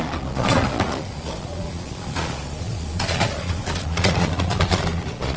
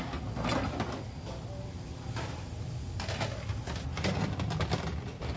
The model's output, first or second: first